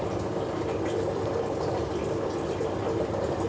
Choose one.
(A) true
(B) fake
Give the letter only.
B